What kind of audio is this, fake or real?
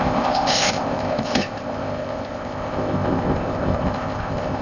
fake